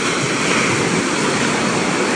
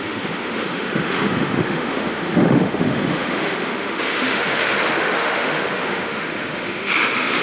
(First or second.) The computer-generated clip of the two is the second